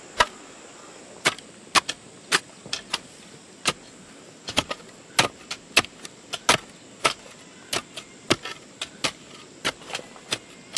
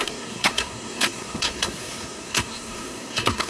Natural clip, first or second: first